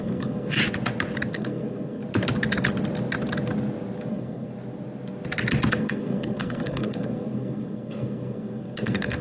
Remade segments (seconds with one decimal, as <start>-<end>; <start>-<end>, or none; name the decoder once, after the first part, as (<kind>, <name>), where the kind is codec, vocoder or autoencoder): 0.0-0.6 (codec, SNAC); 1.3-2.0; 4.1-4.5; 5.7-9.2

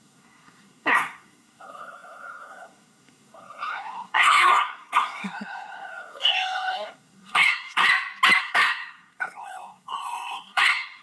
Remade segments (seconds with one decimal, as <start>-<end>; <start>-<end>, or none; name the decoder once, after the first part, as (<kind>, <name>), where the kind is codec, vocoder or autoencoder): 0.0-7.9 (codec, SNAC); 8.4-11.0

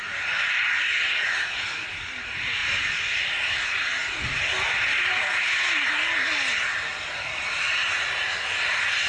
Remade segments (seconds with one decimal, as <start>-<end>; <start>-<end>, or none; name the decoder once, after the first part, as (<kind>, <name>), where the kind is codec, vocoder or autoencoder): none